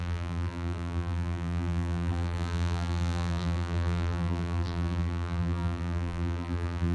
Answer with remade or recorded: remade